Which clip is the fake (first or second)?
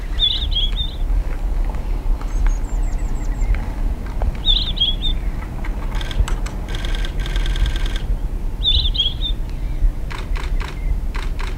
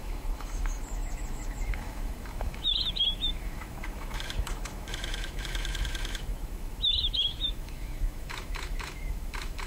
second